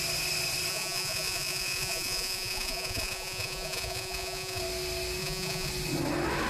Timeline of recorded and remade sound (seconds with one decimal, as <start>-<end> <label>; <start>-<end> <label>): 0.0-0.7 recorded; 0.7-4.6 remade; 4.6-5.2 recorded; 5.2-5.7 remade; 5.7-6.5 recorded